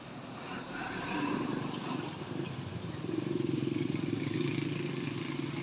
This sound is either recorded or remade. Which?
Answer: recorded